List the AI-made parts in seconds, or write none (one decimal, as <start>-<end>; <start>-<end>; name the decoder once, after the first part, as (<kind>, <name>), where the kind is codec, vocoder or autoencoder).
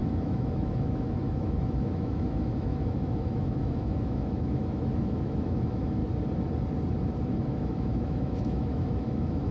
0.0-6.0 (autoencoder, DAC-VAE); 7.4-9.5